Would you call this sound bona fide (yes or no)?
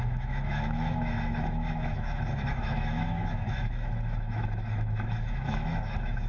no